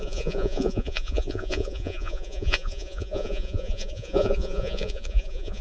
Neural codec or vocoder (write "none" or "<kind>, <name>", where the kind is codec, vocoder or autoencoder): vocoder, Vocos